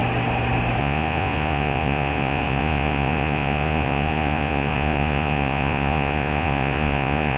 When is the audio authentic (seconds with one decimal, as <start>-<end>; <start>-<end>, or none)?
0.0-0.8